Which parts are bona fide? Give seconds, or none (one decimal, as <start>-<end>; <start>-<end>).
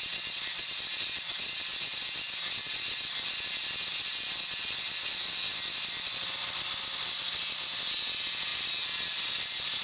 0.0-9.8